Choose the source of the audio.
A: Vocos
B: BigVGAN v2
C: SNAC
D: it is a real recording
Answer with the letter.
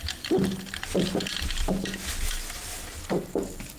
D